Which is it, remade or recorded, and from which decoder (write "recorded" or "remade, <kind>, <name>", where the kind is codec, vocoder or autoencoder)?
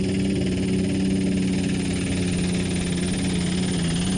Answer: recorded